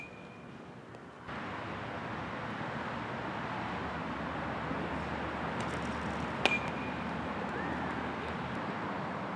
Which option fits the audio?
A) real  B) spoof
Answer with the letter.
A